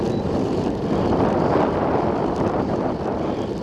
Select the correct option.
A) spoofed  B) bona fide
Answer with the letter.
A